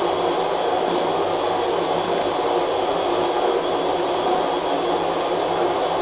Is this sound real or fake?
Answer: real